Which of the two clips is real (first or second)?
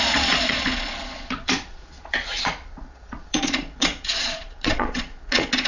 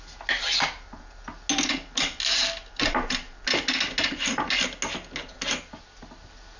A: second